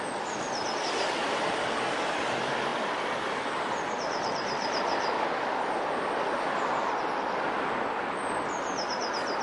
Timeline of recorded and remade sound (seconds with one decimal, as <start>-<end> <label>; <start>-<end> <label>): 0.0-9.4 recorded